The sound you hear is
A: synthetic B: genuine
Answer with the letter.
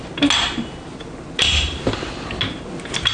B